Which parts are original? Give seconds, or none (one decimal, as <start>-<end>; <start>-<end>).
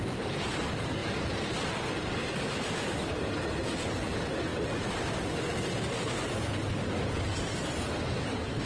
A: 0.0-8.7